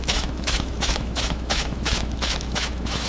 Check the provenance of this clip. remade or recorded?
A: remade